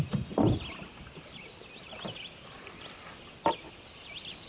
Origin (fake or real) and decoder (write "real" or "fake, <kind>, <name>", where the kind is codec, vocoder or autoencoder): fake, vocoder, BigVGAN v2